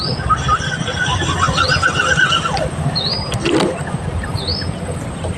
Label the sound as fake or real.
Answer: real